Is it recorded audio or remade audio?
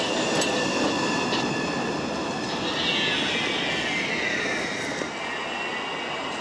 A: recorded